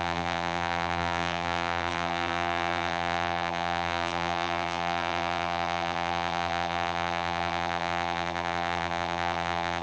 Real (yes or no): no